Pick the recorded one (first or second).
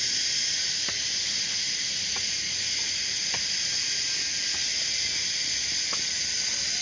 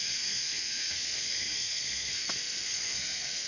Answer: first